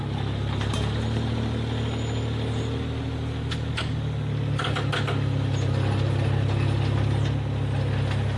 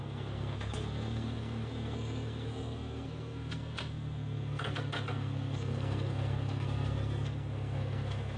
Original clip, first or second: first